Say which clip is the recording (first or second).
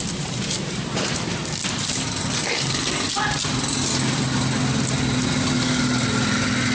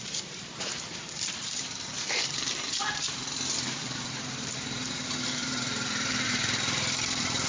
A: first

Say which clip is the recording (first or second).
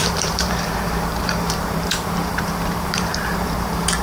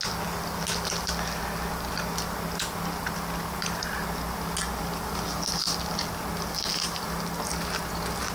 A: second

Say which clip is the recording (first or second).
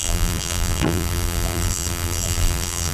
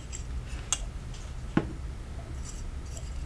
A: second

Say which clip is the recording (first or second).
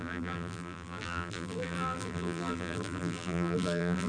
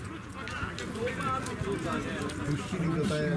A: second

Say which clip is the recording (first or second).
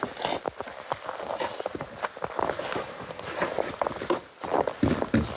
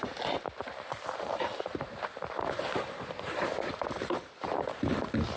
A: first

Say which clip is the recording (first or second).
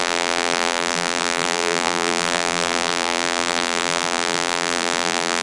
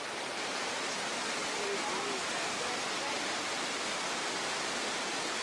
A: second